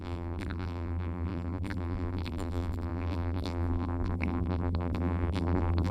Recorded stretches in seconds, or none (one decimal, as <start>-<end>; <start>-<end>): none